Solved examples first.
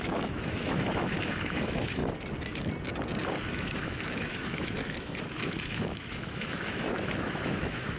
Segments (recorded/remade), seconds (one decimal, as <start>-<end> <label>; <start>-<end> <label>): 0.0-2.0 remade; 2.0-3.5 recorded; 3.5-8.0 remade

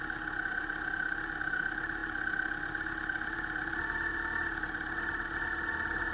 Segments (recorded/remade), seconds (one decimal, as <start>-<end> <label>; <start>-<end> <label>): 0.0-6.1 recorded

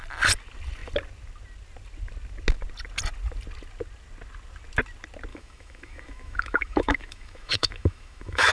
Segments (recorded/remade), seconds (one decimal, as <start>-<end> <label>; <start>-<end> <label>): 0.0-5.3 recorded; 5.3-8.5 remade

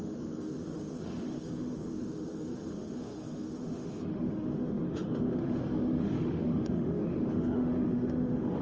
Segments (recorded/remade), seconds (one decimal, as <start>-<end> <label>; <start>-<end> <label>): 0.0-8.6 remade